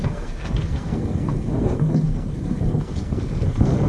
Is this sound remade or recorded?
remade